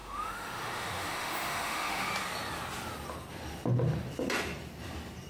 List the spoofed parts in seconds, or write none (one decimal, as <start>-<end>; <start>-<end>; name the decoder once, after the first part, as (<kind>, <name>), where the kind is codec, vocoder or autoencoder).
0.0-2.1 (autoencoder, DAC-VAE)